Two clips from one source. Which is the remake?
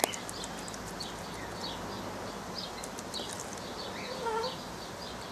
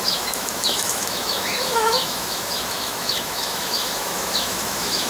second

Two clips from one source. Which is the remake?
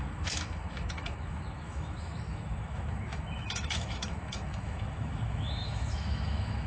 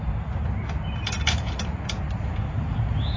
first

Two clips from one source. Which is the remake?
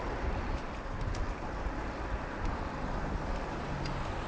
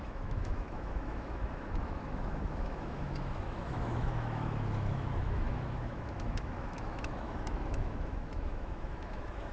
second